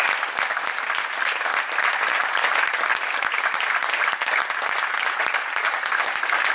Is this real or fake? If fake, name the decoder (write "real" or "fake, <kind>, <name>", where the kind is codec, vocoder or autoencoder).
real